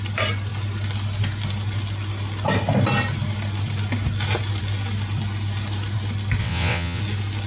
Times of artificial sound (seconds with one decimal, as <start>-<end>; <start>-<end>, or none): 6.4-7.0